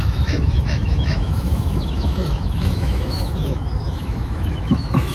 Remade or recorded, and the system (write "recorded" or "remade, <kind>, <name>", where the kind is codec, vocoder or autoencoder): remade, autoencoder, DAC-VAE